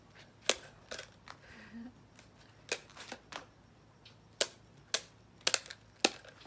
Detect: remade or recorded recorded